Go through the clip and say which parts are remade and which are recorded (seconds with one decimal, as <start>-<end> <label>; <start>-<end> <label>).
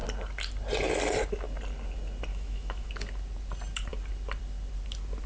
0.0-2.3 recorded; 2.3-2.9 remade; 2.9-5.3 recorded